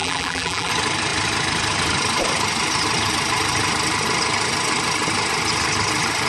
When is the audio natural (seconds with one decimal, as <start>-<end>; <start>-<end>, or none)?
0.7-6.3